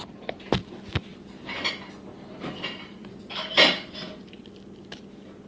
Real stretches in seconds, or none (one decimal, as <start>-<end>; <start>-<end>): 0.0-5.5